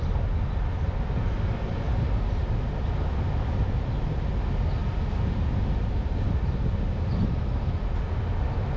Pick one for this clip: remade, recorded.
recorded